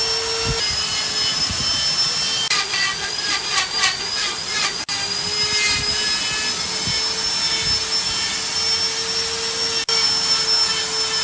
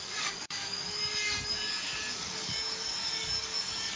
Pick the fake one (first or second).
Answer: second